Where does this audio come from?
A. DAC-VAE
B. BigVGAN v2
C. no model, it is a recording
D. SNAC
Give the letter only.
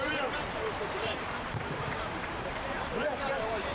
B